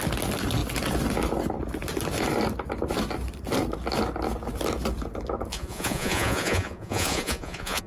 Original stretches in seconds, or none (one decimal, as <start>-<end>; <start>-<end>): 0.0-5.5